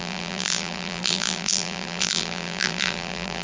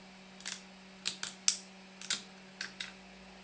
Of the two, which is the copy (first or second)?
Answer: first